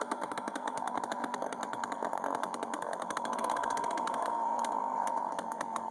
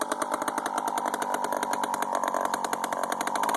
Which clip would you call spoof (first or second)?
first